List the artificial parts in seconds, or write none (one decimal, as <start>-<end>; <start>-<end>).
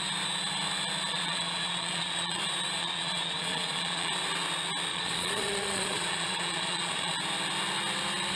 1.1-2.4; 2.8-4.1; 4.9-7.1